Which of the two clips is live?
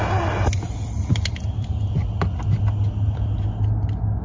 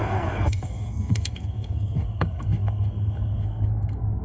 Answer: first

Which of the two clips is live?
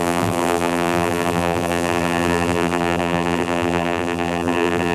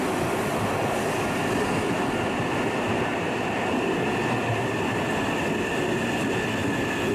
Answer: second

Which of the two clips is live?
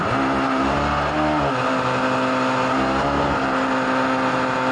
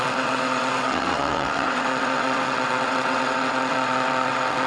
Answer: first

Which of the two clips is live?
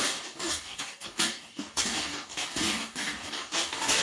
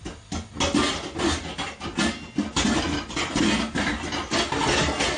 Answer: second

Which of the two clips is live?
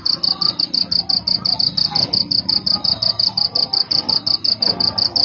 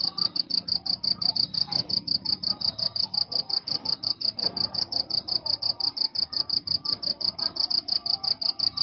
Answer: first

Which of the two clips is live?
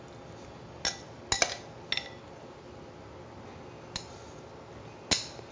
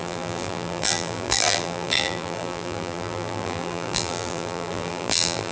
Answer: first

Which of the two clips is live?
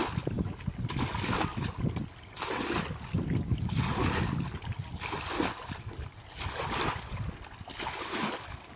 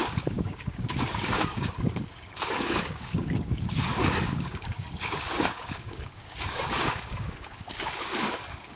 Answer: first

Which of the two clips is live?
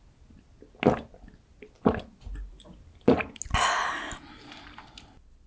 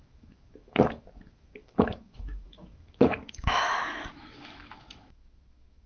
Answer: first